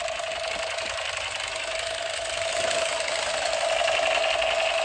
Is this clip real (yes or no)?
yes